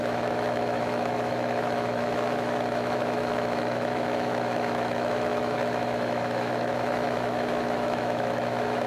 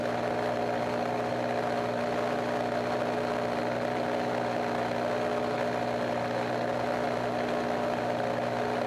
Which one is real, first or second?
second